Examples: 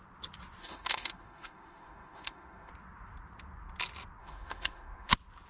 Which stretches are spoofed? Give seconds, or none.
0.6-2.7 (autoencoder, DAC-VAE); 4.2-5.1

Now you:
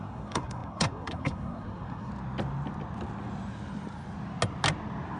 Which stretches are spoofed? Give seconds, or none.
0.0-2.1 (codec, SNAC)